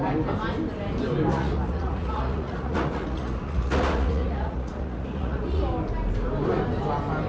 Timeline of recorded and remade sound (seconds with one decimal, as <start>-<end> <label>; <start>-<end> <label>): 0.0-1.3 recorded; 1.3-5.6 remade; 5.6-7.3 recorded